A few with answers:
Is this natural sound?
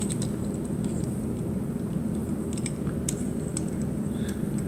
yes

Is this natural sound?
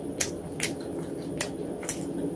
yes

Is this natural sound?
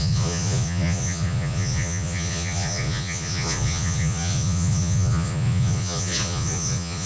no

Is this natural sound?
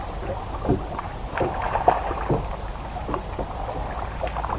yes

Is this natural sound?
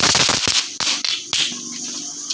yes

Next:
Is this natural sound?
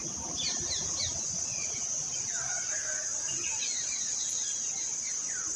yes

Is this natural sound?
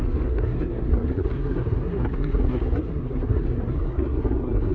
no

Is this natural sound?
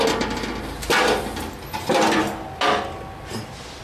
yes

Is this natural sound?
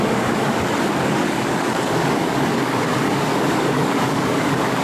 no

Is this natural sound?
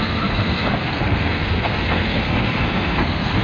no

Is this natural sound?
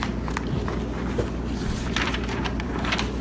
yes